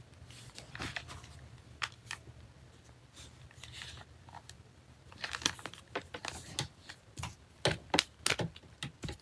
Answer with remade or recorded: recorded